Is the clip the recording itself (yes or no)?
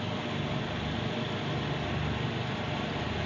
yes